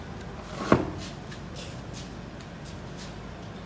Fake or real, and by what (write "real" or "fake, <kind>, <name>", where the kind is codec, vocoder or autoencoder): real